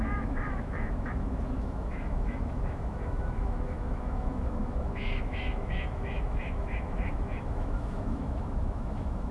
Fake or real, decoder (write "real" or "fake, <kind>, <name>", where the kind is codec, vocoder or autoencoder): fake, autoencoder, DAC-VAE